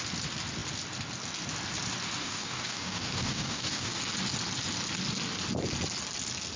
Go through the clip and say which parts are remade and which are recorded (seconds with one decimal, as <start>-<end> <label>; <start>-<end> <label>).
0.0-2.2 recorded; 2.2-4.0 remade; 4.0-6.6 recorded